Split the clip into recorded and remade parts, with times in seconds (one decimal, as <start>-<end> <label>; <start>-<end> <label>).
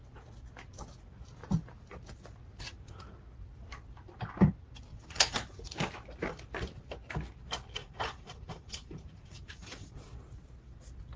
0.0-4.9 recorded; 4.9-5.9 remade; 5.9-7.8 recorded; 7.8-9.9 remade; 9.9-11.2 recorded